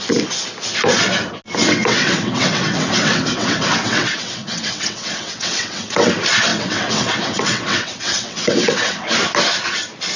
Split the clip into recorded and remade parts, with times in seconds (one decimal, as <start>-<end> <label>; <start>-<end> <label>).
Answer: 0.0-1.6 recorded; 1.6-6.1 remade; 6.1-6.5 recorded; 6.5-9.1 remade; 9.1-10.2 recorded